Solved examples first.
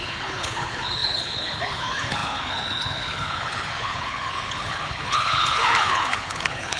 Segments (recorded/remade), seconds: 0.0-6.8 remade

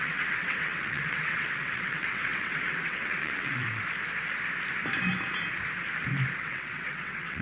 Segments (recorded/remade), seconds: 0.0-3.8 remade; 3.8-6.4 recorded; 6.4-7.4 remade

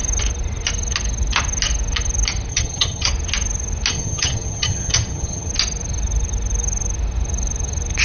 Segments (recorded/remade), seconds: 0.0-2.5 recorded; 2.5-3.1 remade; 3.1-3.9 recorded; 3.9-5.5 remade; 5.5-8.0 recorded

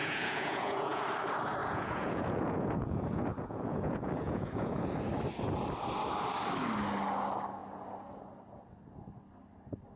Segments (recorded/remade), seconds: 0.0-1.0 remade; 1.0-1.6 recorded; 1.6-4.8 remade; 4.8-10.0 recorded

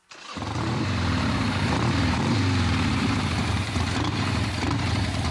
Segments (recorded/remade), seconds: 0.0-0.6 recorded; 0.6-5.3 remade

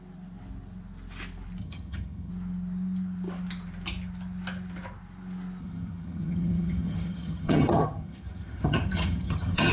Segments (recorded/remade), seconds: 0.0-1.6 recorded; 1.6-2.3 remade; 2.3-5.6 recorded; 5.6-9.7 remade

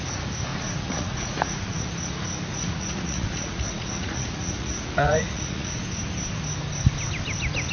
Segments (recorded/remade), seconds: 0.0-0.5 recorded; 0.5-1.9 remade; 1.9-2.5 recorded; 2.5-5.8 remade; 5.8-7.7 recorded

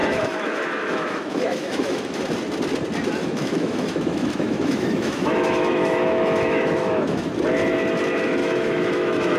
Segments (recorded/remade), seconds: 0.0-2.2 remade; 2.2-3.2 recorded; 3.2-7.3 remade; 7.3-8.4 recorded; 8.4-9.4 remade